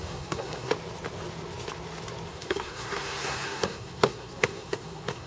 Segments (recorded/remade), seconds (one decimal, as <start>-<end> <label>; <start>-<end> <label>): 0.0-0.7 remade; 0.7-2.3 recorded; 2.3-5.3 remade